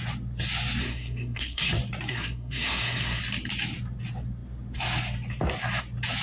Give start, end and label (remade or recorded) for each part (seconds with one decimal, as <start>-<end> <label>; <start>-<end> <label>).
0.0-0.8 recorded; 0.8-1.7 remade; 1.7-2.1 recorded; 2.1-3.2 remade; 3.2-6.2 recorded